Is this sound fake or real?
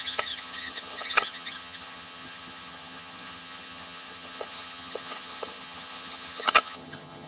fake